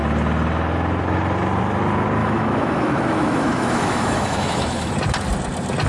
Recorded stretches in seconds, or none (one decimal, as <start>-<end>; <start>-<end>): 0.0-2.2; 4.9-5.9